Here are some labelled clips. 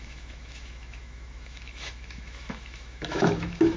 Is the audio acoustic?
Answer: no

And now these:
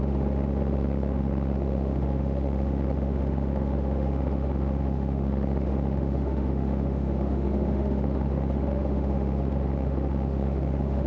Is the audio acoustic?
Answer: no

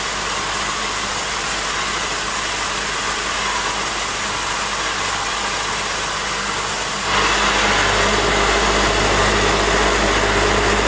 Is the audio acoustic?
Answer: yes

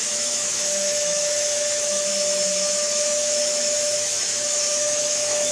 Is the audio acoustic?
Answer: no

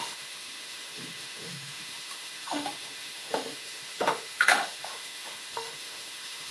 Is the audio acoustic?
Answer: no